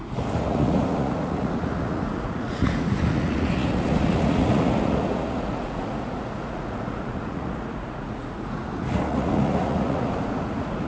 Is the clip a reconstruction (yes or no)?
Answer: yes